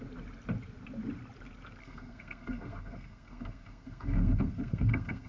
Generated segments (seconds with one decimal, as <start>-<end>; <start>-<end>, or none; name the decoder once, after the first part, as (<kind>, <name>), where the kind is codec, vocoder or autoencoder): 1.8-5.3 (codec, SNAC)